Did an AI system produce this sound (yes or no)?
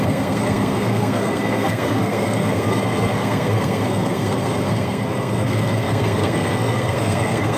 yes